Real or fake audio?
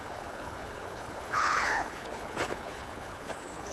fake